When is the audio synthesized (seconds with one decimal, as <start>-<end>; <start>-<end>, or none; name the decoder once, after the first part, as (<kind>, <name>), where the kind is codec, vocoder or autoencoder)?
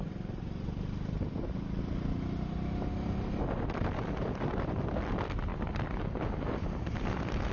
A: none